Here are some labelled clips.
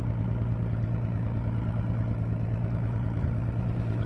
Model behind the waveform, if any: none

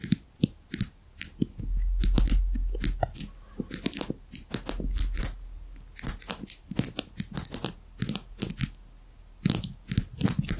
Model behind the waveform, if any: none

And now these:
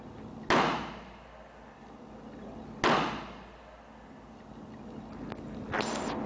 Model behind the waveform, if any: none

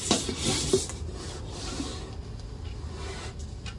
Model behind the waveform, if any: none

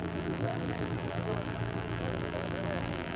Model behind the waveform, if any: vocoder, BigVGAN v2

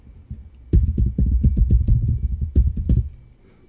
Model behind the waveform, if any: none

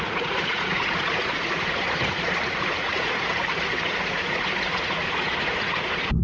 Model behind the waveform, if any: vocoder, Vocos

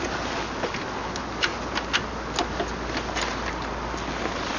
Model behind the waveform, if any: none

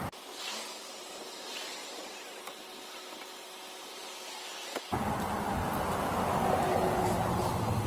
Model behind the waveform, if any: none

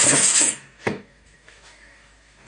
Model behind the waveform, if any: codec, DAC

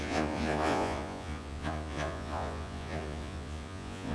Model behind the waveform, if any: vocoder, Vocos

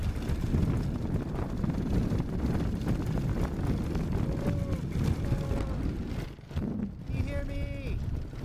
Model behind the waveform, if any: none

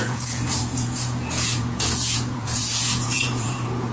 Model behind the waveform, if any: vocoder, Vocos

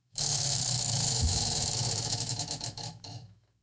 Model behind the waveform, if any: autoencoder, DAC-VAE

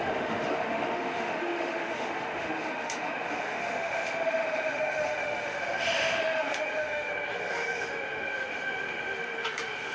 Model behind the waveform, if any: autoencoder, DAC-VAE